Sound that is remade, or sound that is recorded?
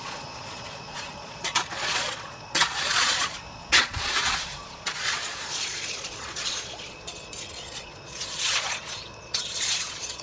remade